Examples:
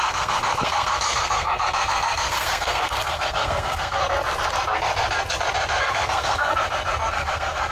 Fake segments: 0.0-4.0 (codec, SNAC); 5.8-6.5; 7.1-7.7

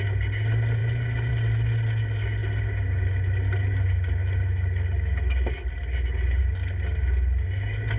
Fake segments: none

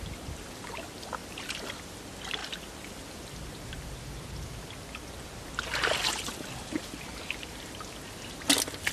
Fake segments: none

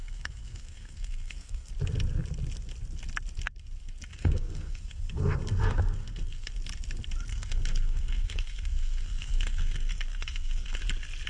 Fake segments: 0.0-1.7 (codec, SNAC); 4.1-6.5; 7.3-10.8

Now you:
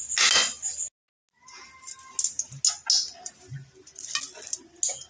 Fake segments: none